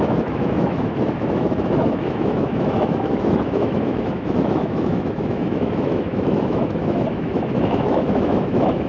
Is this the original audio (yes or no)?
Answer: no